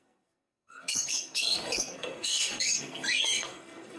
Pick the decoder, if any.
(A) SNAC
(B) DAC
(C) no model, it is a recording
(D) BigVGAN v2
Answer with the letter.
A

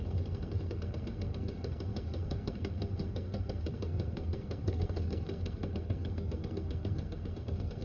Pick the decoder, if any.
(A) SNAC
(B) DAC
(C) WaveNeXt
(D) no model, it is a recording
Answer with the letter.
A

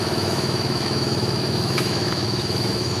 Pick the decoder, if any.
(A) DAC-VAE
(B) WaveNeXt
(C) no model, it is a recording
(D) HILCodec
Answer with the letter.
A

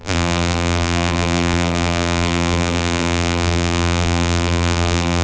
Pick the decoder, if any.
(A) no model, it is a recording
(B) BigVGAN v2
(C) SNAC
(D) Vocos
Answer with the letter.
B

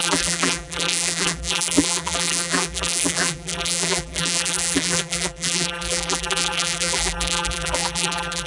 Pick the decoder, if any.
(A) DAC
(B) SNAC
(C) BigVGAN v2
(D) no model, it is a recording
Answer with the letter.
C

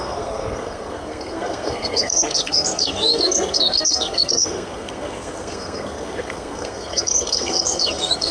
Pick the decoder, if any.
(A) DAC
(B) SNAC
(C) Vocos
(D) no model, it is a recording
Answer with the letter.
B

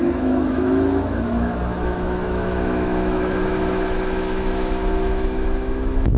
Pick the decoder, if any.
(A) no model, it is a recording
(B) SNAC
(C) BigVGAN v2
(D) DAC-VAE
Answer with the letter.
D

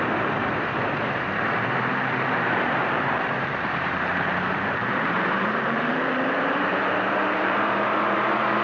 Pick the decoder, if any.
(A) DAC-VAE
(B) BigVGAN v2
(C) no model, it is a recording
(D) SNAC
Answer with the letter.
B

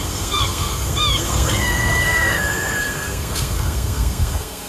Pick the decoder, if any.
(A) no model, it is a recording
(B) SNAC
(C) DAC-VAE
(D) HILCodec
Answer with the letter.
B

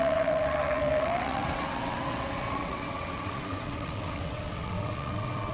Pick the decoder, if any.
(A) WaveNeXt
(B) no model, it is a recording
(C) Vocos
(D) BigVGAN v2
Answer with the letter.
A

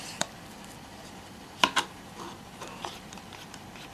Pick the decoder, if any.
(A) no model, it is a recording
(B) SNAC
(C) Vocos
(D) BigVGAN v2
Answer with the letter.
D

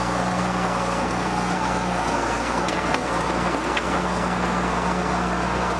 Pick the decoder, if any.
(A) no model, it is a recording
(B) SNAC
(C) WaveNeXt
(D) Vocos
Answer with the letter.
B